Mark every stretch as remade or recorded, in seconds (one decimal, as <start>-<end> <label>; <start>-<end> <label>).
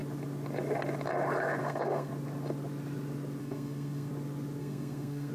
0.0-1.6 recorded; 1.6-2.1 remade; 2.1-3.4 recorded; 3.4-4.1 remade; 4.1-4.6 recorded; 4.6-5.3 remade